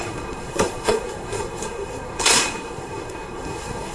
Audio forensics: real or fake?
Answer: fake